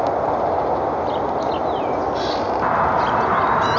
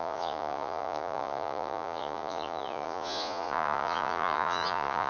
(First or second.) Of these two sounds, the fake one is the second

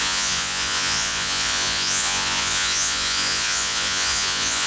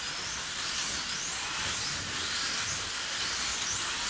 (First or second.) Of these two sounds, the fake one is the first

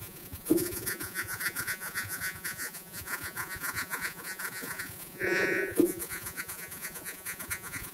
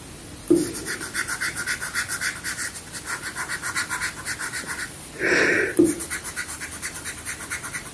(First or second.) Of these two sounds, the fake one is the first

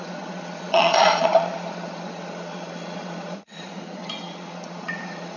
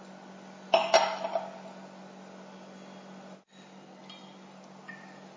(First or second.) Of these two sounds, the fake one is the first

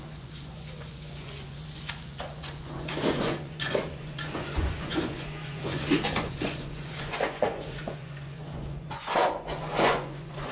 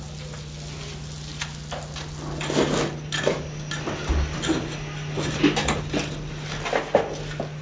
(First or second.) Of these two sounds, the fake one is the first